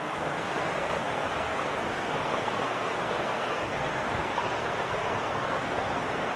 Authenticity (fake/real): fake